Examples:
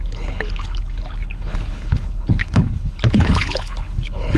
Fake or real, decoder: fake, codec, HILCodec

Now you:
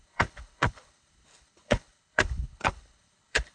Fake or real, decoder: fake, codec, HILCodec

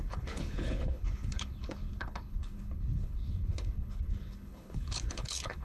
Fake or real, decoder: fake, codec, HILCodec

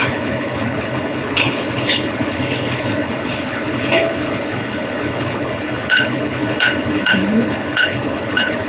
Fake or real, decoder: fake, codec, HILCodec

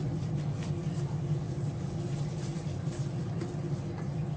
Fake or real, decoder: real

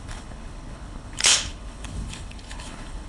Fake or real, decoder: fake, codec, HILCodec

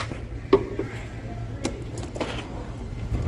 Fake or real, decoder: real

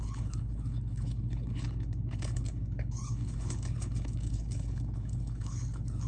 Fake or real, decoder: fake, codec, HILCodec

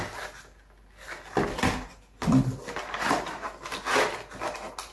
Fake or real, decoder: real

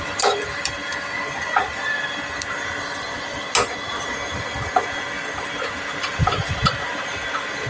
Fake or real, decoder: real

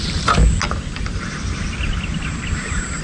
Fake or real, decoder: real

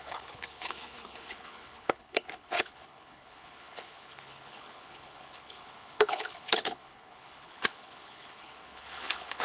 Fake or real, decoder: fake, codec, HILCodec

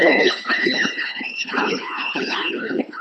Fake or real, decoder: fake, codec, HILCodec